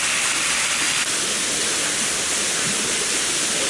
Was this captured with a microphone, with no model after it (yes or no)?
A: yes